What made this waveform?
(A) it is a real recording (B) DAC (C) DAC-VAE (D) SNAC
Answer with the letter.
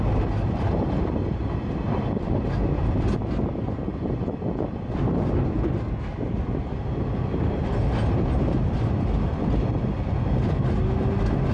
A